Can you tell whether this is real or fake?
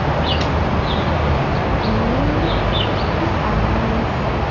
real